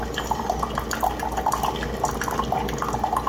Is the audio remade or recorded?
recorded